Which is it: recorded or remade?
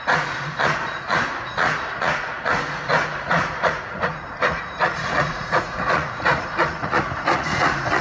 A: remade